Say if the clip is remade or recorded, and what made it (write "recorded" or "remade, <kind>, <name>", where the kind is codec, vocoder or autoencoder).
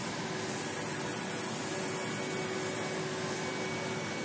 recorded